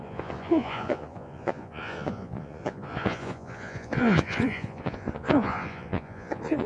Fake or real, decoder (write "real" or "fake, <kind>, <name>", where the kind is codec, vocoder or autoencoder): fake, vocoder, Vocos